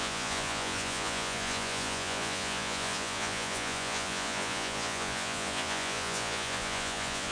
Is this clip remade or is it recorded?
remade